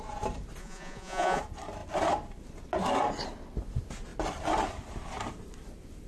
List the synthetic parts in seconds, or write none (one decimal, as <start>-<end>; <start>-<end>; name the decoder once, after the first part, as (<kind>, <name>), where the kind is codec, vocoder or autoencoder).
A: 0.6-1.4 (vocoder, Vocos)